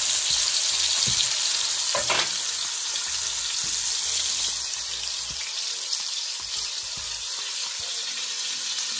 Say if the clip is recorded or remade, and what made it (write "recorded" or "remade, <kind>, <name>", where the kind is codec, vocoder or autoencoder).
recorded